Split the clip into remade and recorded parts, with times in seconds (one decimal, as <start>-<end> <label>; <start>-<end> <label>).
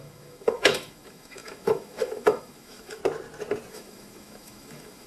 0.0-3.0 remade; 3.0-3.7 recorded; 3.7-5.1 remade